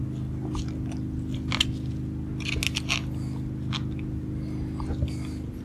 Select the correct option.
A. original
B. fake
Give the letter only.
A